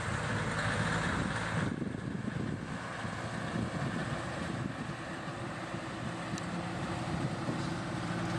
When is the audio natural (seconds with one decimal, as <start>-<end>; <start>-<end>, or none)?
0.0-4.0; 7.7-8.4